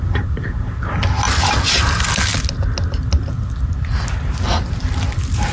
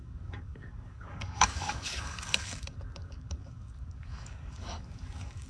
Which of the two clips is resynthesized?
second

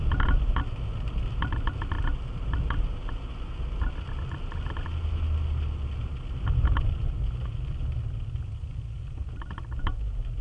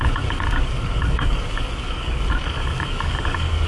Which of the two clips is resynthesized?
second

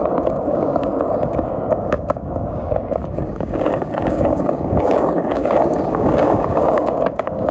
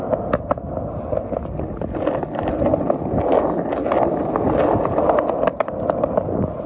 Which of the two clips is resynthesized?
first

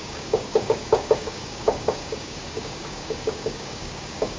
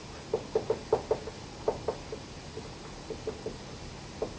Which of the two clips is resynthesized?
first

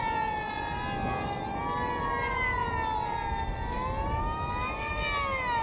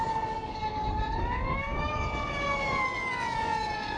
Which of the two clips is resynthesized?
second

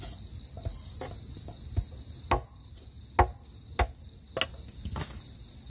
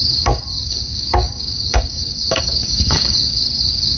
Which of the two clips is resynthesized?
second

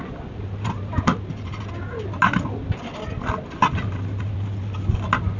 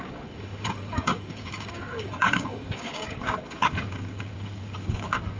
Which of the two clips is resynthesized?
second